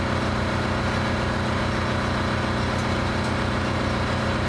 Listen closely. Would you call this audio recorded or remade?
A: recorded